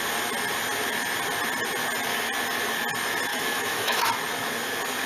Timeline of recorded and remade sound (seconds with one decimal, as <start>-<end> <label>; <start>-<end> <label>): 0.0-3.3 recorded; 3.3-4.1 remade; 4.1-5.1 recorded